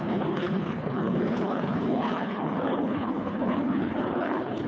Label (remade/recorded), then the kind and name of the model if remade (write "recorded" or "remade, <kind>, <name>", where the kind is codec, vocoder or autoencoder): remade, codec, HILCodec